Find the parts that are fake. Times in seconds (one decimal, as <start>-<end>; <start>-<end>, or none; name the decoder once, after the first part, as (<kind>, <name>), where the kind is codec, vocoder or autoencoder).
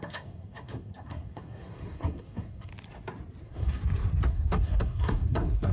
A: 0.0-2.7 (codec, SNAC); 3.4-3.8; 4.3-5.7